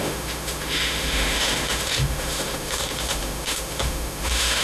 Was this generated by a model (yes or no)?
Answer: yes